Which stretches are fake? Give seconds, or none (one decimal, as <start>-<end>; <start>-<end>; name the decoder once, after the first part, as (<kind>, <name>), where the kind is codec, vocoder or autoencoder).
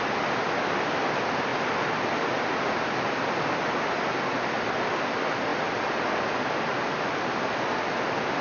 none